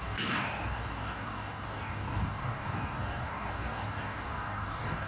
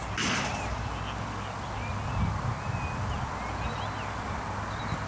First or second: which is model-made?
first